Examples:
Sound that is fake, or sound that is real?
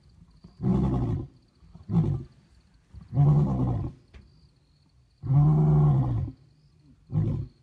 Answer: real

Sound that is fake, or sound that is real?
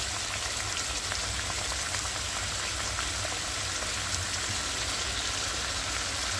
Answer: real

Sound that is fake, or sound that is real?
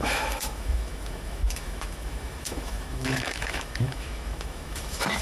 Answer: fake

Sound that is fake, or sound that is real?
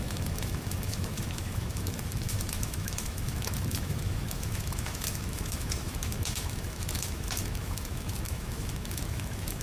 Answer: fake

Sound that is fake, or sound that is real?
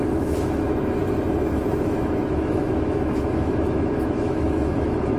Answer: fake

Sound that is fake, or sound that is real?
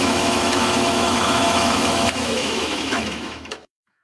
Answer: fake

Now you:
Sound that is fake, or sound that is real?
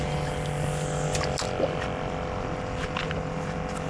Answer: real